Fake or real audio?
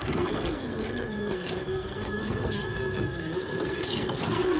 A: fake